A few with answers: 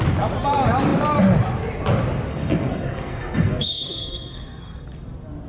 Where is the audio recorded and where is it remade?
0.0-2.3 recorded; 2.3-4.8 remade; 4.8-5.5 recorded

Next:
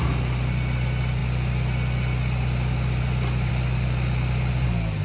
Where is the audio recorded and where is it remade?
0.0-5.0 recorded

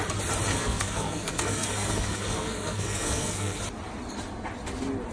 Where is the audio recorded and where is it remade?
0.0-0.5 recorded; 0.5-3.6 remade; 3.6-5.1 recorded

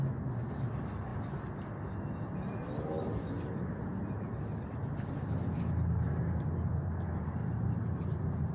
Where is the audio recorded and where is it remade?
0.0-8.5 recorded